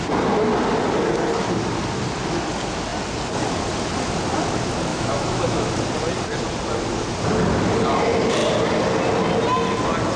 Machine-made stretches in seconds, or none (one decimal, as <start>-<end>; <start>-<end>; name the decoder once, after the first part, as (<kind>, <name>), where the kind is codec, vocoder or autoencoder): 4.9-5.7 (autoencoder, DAC-VAE)